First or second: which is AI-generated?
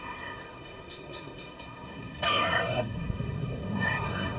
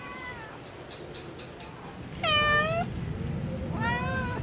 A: first